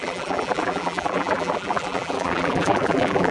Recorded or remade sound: remade